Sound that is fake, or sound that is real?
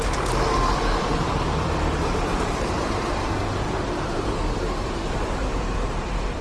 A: fake